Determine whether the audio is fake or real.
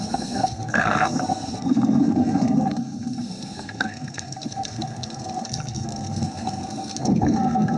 fake